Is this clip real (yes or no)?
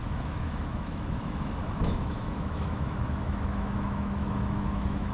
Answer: no